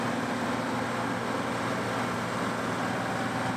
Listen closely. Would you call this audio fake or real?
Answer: real